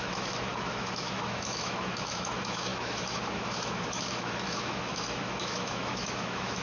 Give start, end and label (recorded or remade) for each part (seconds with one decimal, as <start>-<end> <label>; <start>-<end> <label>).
0.0-6.6 remade

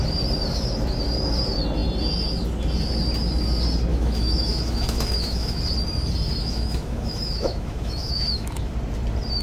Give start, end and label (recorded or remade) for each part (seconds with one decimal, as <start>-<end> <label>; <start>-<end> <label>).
0.0-3.9 recorded; 3.9-5.6 remade; 5.6-6.4 recorded; 6.4-8.7 remade; 8.7-9.4 recorded

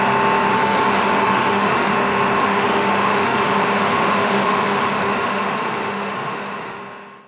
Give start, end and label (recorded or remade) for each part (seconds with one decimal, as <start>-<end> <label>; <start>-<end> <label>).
0.0-0.5 recorded; 0.5-1.9 remade; 1.9-2.4 recorded; 2.4-6.8 remade; 6.8-7.3 recorded